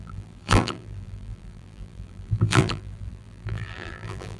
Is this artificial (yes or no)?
yes